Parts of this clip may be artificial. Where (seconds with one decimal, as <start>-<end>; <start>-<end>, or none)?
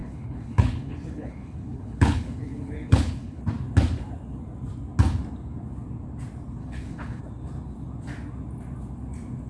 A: 0.0-3.4; 6.6-7.2